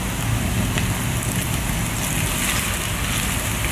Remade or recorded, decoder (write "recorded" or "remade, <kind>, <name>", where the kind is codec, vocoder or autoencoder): recorded